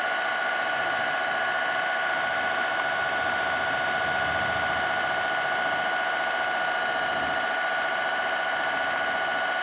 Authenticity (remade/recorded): recorded